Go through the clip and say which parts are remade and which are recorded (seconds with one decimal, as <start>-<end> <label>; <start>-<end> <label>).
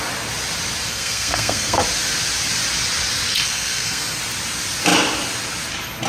0.0-0.9 recorded; 0.9-1.8 remade; 1.8-3.3 recorded; 3.3-4.2 remade; 4.2-6.1 recorded